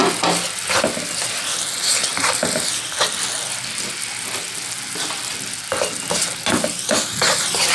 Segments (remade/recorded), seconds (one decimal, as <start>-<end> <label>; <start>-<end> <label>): 0.0-7.7 recorded